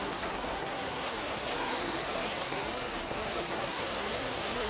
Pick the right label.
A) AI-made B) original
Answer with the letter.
A